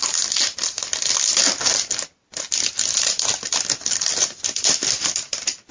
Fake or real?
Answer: real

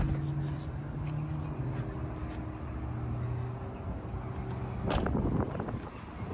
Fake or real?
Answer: real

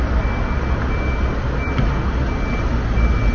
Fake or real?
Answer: real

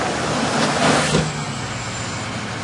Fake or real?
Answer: real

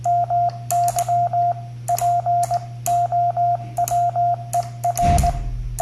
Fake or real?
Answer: real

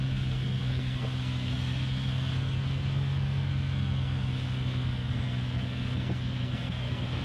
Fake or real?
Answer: fake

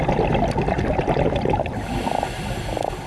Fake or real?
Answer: real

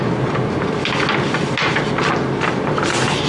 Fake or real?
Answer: real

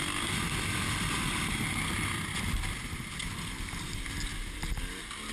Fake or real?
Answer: real